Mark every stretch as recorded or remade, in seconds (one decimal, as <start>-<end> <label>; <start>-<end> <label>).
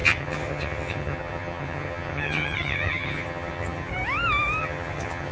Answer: 0.0-3.9 remade; 3.9-4.6 recorded; 4.6-5.3 remade